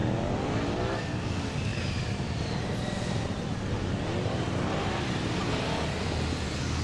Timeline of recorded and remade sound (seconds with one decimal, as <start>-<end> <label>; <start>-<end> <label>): 0.0-1.0 remade; 1.0-1.7 recorded; 1.7-5.5 remade; 5.5-6.8 recorded